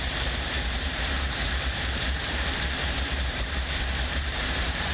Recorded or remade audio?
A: remade